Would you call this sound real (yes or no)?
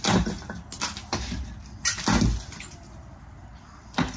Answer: yes